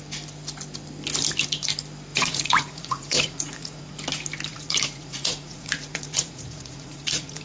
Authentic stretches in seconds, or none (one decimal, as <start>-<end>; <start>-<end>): 0.0-2.1; 3.8-4.5